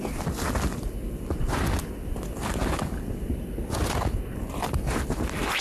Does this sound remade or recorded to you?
recorded